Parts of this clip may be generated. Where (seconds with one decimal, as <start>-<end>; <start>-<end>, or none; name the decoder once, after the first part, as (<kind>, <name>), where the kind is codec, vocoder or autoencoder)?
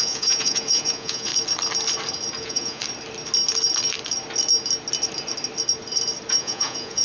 0.0-1.3 (vocoder, Vocos); 2.4-2.8; 6.3-7.0